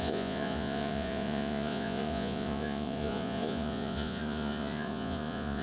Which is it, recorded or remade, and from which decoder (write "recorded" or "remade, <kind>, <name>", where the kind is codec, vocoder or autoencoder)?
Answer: remade, vocoder, Vocos